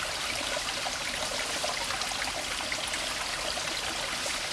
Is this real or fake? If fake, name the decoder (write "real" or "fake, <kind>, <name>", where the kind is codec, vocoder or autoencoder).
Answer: real